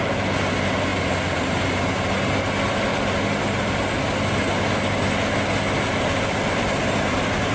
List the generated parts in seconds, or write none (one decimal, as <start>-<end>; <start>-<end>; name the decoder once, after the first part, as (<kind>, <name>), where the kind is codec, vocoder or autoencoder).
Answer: none